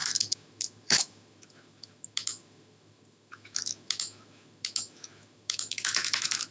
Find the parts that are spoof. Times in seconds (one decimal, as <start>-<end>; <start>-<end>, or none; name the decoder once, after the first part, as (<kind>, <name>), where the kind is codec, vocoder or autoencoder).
0.0-6.5 (autoencoder, DAC-VAE)